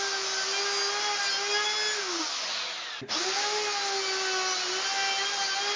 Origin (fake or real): real